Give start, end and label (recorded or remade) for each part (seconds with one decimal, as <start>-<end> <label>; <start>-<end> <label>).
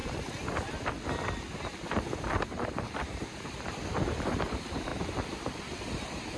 0.0-6.4 recorded